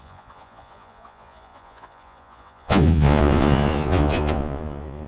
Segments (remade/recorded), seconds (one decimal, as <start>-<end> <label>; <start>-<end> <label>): 0.0-5.1 remade

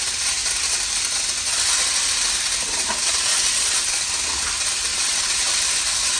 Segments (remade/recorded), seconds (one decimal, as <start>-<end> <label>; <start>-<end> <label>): 0.0-3.3 recorded; 3.3-4.0 remade; 4.0-4.9 recorded; 4.9-5.6 remade; 5.6-6.2 recorded

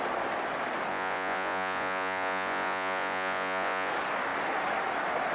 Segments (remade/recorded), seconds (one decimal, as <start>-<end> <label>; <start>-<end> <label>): 0.0-0.9 recorded; 0.9-3.9 remade; 3.9-5.3 recorded

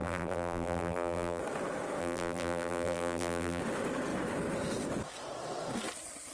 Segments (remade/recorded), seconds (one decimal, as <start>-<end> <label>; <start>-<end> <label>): 0.0-1.4 remade; 1.4-2.0 recorded; 2.0-3.6 remade; 3.6-6.3 recorded

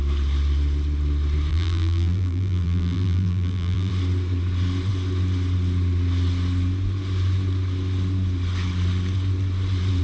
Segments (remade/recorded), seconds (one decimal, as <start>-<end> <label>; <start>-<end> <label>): 0.0-1.5 recorded; 1.5-3.9 remade; 3.9-10.0 recorded

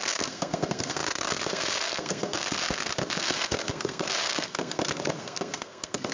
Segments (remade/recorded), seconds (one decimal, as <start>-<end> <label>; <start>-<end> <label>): 0.0-6.1 remade

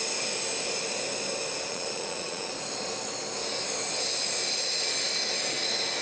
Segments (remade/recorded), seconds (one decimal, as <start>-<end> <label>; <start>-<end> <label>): 0.0-1.7 recorded; 1.7-2.5 remade; 2.5-6.0 recorded